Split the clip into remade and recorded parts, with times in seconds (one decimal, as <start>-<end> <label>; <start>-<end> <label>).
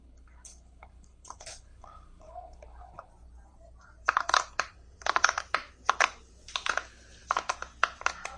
0.0-3.1 remade; 3.1-8.4 recorded